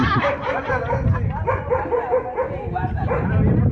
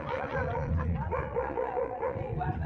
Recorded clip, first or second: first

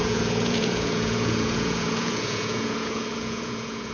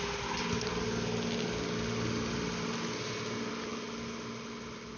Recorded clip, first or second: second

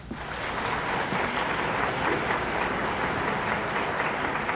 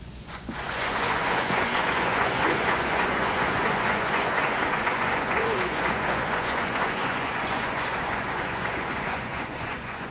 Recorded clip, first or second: first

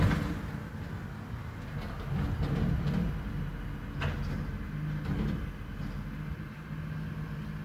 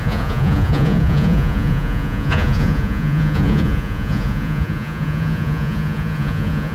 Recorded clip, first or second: first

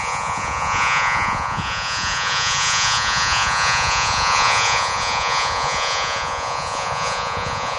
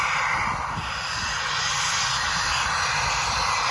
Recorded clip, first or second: second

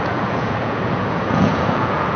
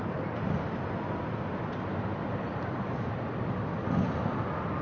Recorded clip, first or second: second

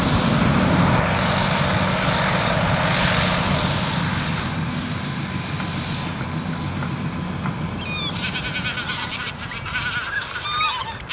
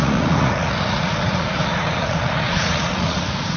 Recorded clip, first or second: first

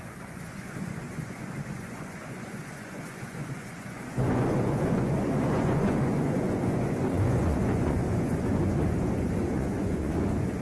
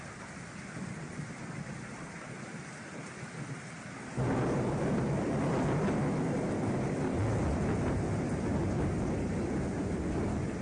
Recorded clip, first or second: second